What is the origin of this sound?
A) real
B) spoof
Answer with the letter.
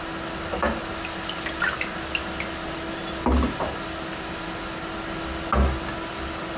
A